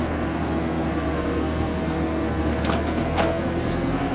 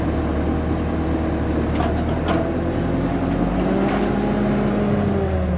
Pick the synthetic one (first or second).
first